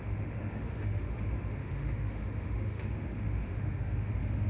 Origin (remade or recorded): remade